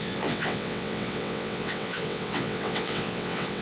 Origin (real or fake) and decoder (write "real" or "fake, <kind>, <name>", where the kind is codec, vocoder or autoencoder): fake, vocoder, WaveNeXt